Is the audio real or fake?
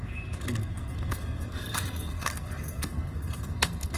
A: fake